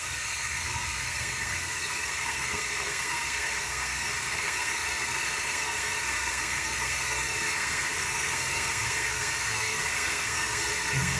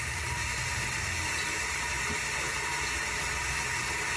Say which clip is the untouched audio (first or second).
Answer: second